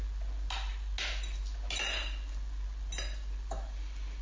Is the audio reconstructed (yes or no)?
no